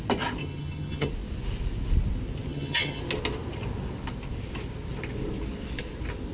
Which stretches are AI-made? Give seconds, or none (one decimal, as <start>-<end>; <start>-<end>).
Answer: 0.4-1.1; 2.5-3.0